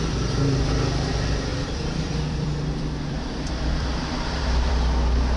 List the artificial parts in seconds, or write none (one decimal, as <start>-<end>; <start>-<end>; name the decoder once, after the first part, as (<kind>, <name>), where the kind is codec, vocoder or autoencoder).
1.5-4.7 (vocoder, BigVGAN v2)